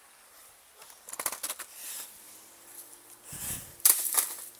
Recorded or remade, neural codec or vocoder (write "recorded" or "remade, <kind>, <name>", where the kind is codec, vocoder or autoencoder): remade, vocoder, BigVGAN v2